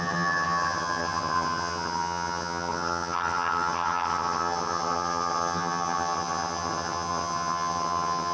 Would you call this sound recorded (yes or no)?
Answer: no